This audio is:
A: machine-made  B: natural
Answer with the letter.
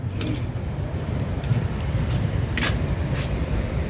B